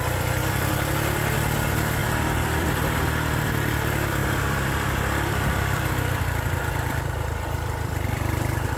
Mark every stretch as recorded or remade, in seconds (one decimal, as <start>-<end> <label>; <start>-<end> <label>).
0.0-2.0 recorded; 2.0-2.6 remade; 2.6-4.2 recorded; 4.2-8.8 remade